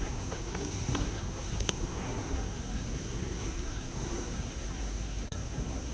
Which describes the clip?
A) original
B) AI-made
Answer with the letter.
B